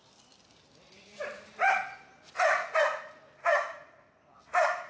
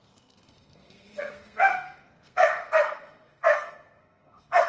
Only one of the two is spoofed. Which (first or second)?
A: second